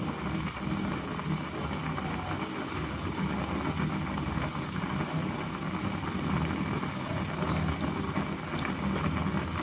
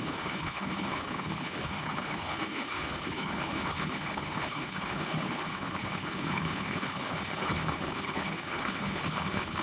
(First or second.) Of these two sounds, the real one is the first